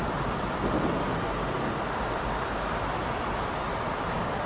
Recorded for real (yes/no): yes